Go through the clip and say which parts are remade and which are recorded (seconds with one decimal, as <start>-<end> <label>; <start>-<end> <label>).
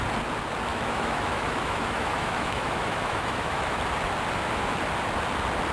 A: 0.0-0.7 recorded; 0.7-3.8 remade; 3.8-5.7 recorded